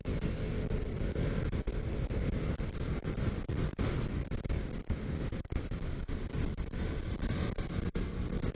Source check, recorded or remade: recorded